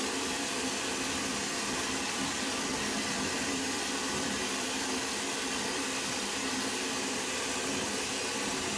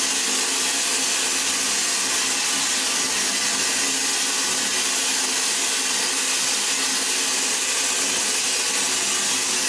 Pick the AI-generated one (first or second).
first